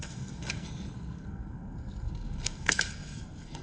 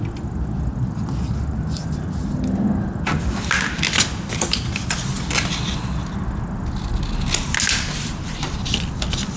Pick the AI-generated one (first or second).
first